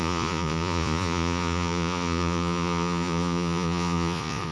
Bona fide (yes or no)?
no